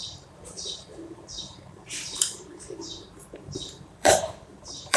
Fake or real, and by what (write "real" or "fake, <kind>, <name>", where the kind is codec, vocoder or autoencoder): fake, vocoder, BigVGAN v2